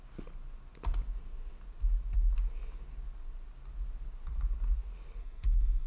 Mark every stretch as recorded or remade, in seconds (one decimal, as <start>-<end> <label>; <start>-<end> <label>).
0.0-5.2 recorded; 5.2-5.9 remade